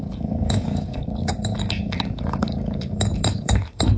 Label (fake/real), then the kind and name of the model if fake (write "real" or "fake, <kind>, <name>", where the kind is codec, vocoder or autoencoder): fake, codec, DAC